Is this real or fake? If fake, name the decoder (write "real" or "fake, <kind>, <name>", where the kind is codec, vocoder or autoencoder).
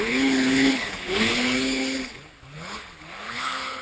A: fake, codec, HILCodec